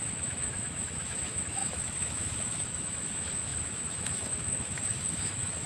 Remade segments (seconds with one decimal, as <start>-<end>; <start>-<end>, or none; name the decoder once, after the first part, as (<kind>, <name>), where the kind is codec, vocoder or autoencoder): 0.0-5.7 (autoencoder, DAC-VAE)